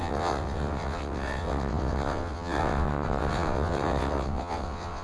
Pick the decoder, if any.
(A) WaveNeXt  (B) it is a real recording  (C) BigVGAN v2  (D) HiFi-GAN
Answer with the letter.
A